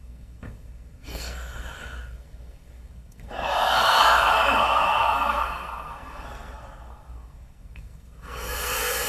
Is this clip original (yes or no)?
no